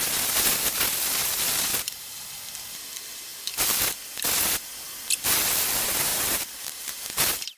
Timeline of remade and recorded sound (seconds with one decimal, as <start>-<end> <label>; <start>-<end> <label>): 0.0-1.7 recorded; 1.7-2.3 remade; 2.3-6.1 recorded; 6.1-7.0 remade; 7.0-7.6 recorded